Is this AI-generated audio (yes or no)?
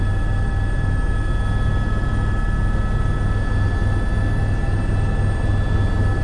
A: no